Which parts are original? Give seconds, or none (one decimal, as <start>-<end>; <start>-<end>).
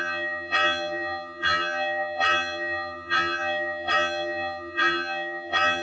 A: none